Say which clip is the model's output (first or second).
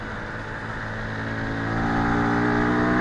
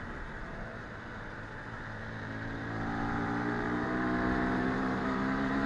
second